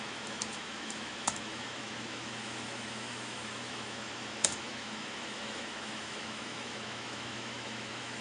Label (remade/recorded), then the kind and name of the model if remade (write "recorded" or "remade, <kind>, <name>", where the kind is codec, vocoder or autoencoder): remade, autoencoder, DAC-VAE